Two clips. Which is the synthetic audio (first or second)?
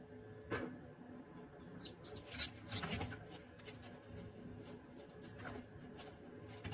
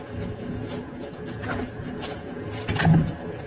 second